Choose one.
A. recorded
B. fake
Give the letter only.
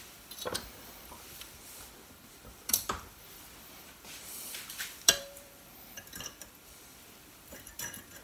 B